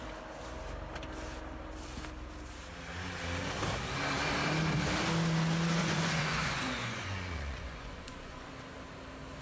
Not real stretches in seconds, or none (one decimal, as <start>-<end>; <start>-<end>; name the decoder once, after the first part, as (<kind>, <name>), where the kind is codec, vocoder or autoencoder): 5.8-8.5 (vocoder, Vocos)